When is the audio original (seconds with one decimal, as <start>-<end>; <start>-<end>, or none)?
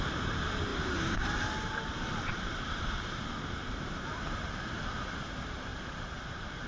none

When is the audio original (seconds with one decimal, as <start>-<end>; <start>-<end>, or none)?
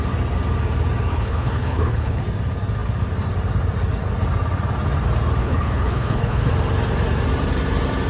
0.0-1.1; 2.2-5.4; 6.5-8.1